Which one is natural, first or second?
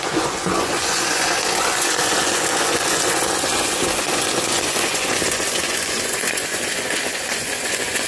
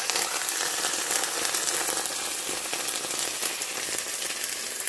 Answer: second